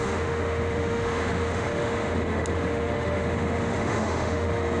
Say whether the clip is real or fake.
fake